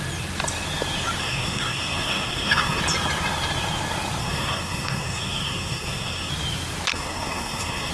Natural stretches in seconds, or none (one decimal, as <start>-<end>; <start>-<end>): 0.0-1.2; 2.8-4.2; 6.3-6.9